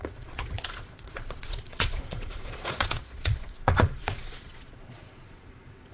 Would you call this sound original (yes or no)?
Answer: no